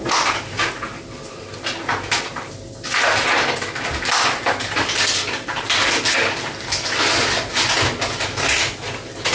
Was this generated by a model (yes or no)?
no